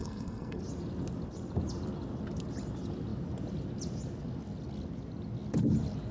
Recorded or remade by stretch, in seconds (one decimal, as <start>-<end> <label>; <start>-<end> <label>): 0.0-0.6 remade; 0.6-6.1 recorded